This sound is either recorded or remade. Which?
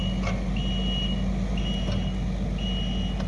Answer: recorded